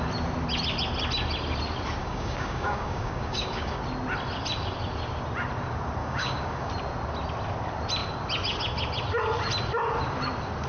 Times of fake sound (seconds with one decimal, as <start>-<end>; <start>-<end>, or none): 2.0-3.8; 6.0-6.7